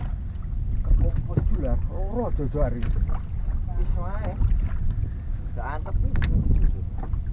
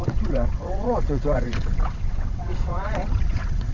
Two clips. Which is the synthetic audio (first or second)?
second